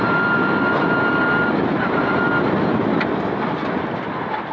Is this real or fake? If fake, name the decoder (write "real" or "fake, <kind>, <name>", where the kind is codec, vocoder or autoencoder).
real